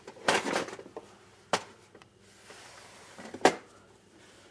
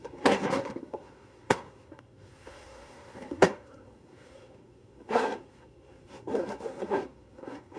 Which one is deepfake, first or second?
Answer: second